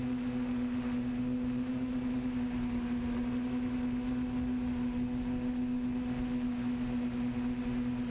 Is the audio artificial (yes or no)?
no